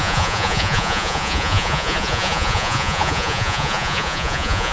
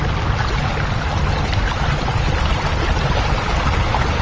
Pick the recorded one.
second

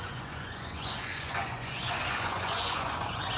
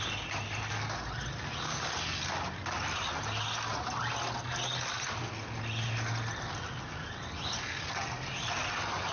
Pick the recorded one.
second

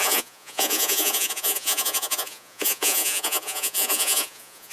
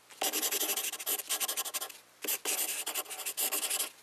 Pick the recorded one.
second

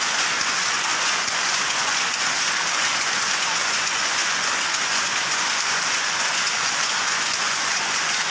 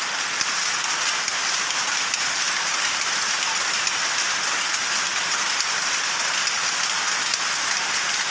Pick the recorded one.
second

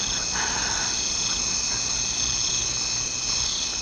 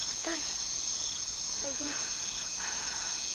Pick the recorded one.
first